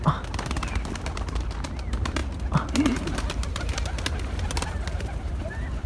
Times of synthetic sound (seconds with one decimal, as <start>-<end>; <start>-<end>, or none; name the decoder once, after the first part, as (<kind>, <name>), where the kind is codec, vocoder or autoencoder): none